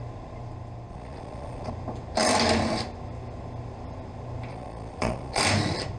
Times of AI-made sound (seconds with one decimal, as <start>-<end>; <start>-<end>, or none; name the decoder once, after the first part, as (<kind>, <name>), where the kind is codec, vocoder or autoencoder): 0.9-1.7 (vocoder, Vocos); 4.5-5.4